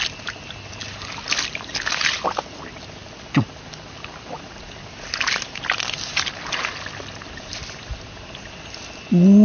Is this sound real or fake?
real